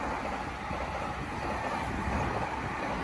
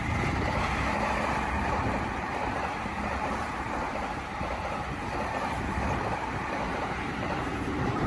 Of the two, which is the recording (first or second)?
first